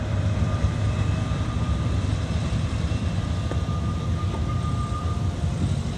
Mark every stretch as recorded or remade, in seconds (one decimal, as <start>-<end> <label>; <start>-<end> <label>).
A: 0.0-2.1 remade; 2.1-4.5 recorded; 4.5-6.0 remade